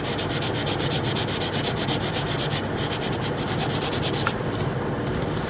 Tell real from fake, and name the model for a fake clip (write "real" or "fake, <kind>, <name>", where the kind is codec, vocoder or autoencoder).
real